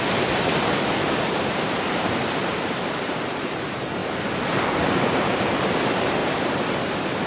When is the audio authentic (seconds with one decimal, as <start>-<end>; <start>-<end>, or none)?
4.0-4.5; 6.2-7.3

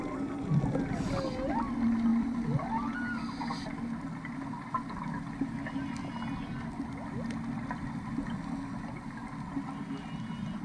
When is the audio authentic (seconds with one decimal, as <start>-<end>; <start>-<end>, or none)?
0.0-10.6